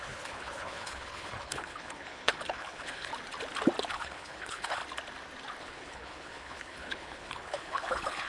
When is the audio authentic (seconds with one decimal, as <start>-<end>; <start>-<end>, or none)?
3.1-3.9; 4.8-5.6